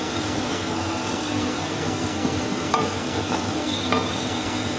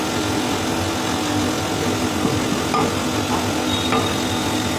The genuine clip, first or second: second